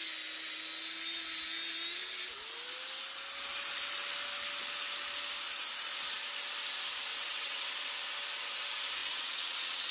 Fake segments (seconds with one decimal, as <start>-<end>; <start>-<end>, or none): 7.1-7.7; 9.0-9.9